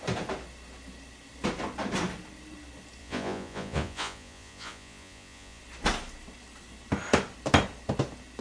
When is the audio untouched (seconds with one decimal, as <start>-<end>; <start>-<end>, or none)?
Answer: 0.0-3.0; 5.6-8.4